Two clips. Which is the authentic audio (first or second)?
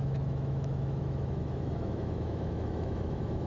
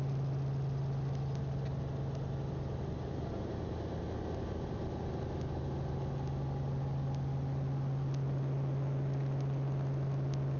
second